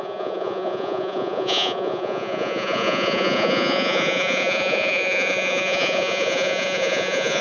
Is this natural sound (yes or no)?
no